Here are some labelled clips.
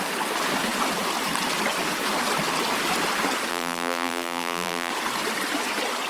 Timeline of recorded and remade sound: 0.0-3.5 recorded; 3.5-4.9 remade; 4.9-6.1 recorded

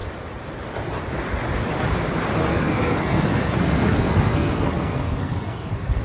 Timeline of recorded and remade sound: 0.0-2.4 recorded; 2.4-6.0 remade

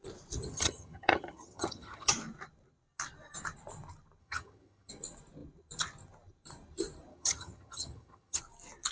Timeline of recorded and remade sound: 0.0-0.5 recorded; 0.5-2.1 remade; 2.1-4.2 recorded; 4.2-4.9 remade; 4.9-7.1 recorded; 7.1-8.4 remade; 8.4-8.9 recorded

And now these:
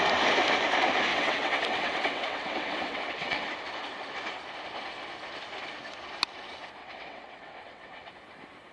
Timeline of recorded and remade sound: 0.0-1.1 recorded; 1.1-3.5 remade; 3.5-6.8 recorded; 6.8-8.1 remade; 8.1-8.7 recorded

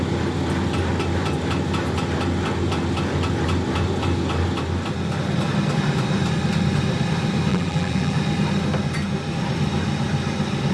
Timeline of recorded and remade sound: 0.0-7.5 recorded; 7.5-8.2 remade; 8.2-10.7 recorded